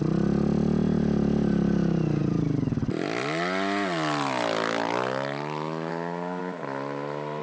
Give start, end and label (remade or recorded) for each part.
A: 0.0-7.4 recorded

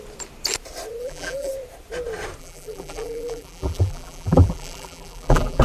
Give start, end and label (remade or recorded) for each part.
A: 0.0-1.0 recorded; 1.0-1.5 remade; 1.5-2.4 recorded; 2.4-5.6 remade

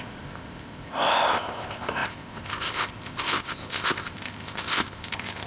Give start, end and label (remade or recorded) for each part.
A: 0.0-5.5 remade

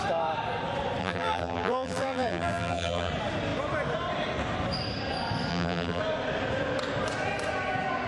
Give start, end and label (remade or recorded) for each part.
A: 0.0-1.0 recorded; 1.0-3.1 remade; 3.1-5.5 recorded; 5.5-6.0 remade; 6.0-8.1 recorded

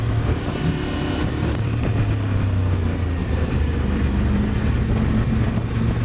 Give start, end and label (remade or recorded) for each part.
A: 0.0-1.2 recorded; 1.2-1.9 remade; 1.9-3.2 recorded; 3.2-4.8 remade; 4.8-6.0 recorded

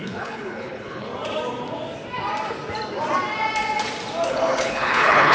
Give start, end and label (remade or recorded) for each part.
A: 0.0-1.1 remade; 1.1-4.3 recorded; 4.3-5.3 remade

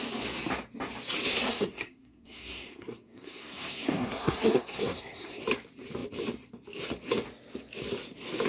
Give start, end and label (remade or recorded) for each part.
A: 0.0-1.3 recorded; 1.3-5.4 remade; 5.4-8.5 recorded